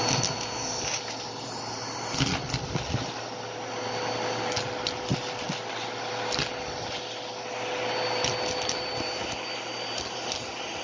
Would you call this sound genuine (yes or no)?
yes